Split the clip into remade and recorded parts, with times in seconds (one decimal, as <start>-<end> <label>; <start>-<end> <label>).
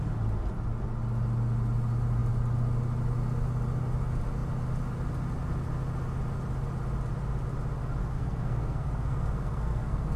0.0-8.0 recorded; 8.0-10.2 remade